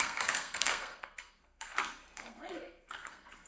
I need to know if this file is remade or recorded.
remade